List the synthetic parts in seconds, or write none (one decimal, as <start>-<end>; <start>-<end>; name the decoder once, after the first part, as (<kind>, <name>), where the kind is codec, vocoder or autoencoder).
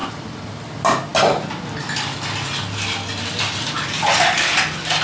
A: none